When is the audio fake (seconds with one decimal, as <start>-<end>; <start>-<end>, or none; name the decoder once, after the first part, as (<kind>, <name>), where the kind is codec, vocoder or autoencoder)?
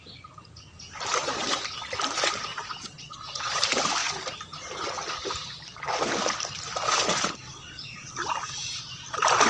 2.5-3.6 (vocoder, Vocos); 7.6-8.1